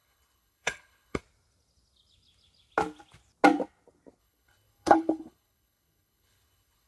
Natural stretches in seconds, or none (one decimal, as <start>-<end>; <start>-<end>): 1.2-4.2